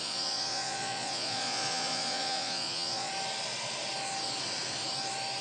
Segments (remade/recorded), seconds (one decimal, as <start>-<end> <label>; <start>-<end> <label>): 0.0-3.1 remade; 3.1-5.4 recorded